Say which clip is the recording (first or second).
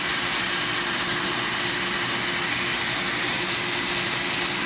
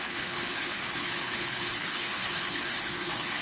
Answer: first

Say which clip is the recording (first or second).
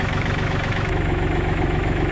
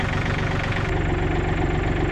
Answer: second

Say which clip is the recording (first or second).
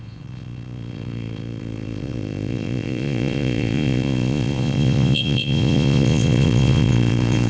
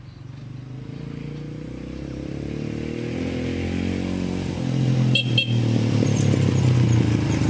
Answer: second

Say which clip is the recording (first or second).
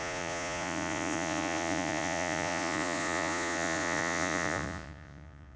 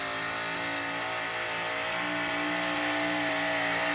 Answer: second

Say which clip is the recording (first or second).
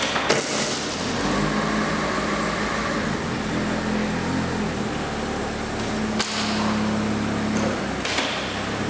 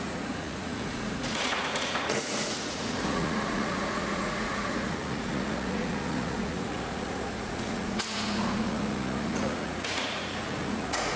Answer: first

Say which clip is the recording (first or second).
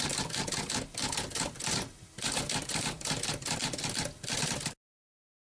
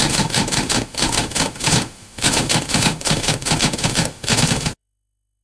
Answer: first